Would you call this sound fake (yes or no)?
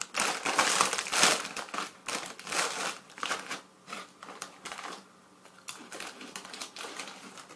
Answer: no